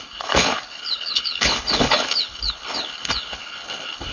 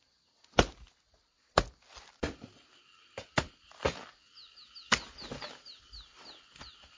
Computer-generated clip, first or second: first